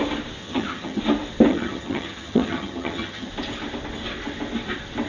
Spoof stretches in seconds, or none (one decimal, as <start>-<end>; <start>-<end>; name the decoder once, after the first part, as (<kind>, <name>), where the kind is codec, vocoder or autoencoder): 0.4-1.0 (vocoder, HiFi-GAN); 1.5-3.3